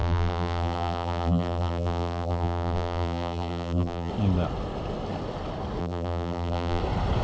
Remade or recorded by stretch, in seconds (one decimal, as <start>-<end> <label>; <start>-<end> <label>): 0.0-4.1 remade; 4.1-5.8 recorded; 5.8-6.8 remade; 6.8-7.2 recorded